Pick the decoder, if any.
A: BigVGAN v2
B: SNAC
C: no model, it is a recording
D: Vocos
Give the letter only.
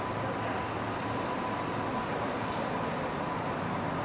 C